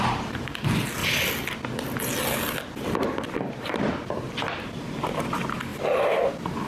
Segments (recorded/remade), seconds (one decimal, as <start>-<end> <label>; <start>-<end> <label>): 0.0-1.0 remade; 1.0-3.3 recorded; 3.3-6.7 remade